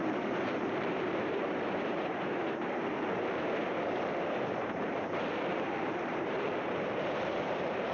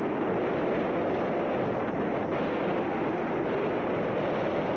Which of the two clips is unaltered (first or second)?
second